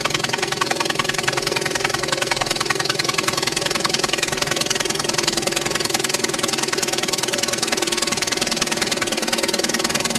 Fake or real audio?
fake